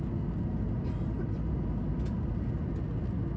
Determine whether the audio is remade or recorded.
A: recorded